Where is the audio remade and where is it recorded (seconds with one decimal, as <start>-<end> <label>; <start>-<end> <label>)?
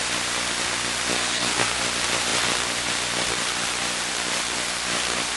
0.0-1.1 recorded; 1.1-1.8 remade; 1.8-5.4 recorded